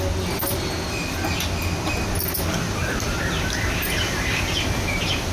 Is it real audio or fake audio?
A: real